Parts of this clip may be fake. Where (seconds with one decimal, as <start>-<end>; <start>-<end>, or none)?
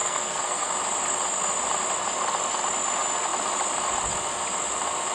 0.0-0.7